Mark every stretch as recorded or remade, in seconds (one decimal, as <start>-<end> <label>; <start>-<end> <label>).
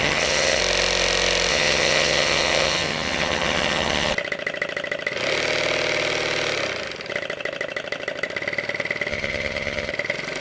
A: 0.0-0.6 remade; 0.6-1.5 recorded; 1.5-4.1 remade; 4.1-9.1 recorded; 9.1-9.9 remade; 9.9-10.4 recorded